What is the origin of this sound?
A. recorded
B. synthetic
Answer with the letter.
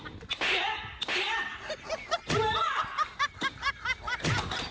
A